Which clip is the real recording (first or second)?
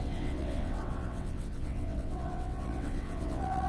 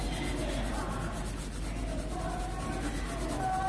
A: second